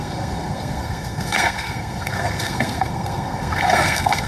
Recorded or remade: remade